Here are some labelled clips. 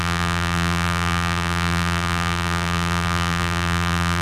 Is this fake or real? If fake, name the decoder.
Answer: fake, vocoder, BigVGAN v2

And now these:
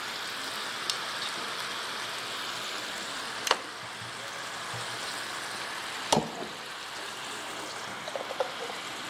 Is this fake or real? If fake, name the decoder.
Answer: real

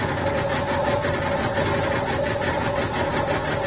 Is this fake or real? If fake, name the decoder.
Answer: real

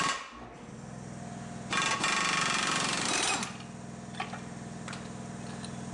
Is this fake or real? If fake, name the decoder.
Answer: real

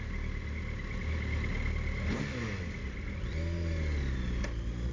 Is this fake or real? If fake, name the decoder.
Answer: real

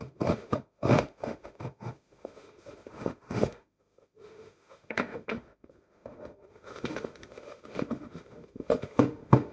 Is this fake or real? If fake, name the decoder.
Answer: fake, autoencoder, DAC-VAE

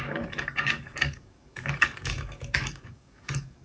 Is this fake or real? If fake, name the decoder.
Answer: fake, codec, DAC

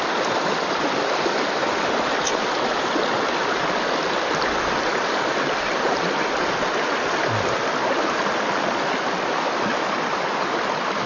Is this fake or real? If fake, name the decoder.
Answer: real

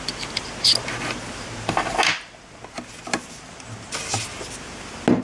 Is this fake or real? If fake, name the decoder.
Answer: real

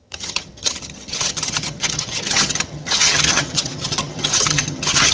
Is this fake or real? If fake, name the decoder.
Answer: fake, vocoder, HiFi-GAN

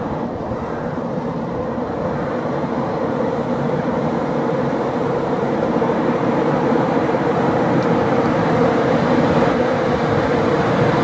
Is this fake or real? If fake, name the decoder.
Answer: fake, vocoder, BigVGAN v2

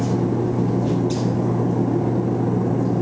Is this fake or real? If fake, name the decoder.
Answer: real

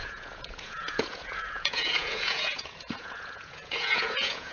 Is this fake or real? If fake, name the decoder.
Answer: fake, vocoder, Vocos